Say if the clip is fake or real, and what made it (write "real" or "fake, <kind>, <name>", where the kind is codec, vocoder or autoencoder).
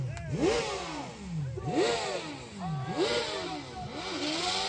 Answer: real